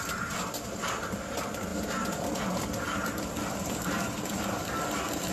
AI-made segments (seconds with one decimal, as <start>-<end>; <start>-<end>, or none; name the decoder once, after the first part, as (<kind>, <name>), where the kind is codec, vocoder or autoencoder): none